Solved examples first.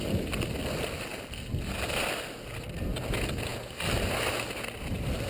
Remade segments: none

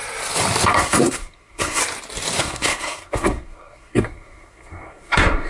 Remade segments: 0.7-1.8; 2.4-5.5